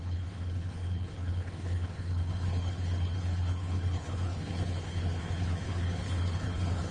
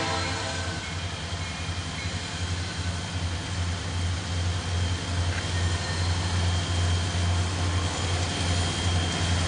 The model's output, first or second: first